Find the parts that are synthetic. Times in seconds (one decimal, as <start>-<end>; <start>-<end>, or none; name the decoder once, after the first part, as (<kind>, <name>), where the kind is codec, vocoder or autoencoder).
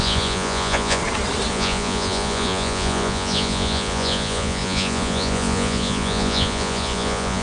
0.0-1.0 (vocoder, Vocos); 1.5-7.4